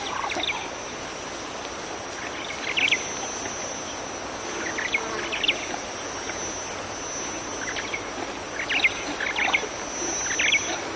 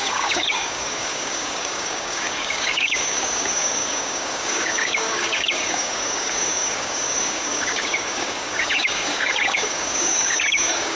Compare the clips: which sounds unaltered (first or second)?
first